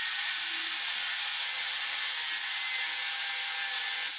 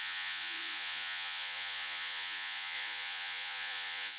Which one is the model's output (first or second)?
second